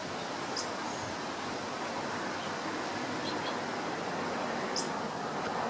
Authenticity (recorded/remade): recorded